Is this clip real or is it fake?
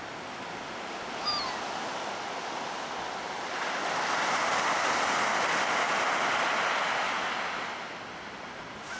real